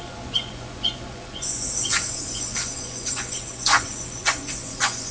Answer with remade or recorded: remade